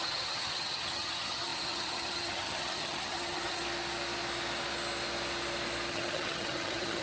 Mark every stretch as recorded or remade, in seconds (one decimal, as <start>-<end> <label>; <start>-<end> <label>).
0.0-3.6 remade; 3.6-5.9 recorded; 5.9-7.0 remade